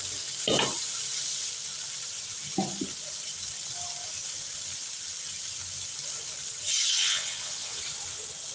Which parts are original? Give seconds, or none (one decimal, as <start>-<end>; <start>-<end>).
0.0-7.0; 7.8-8.5